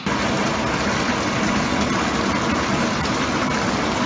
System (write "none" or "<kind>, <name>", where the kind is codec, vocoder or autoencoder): none